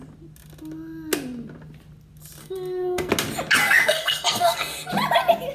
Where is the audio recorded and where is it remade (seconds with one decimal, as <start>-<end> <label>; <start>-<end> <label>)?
0.0-2.4 recorded; 2.4-3.1 remade; 3.1-3.6 recorded; 3.6-4.9 remade; 4.9-5.5 recorded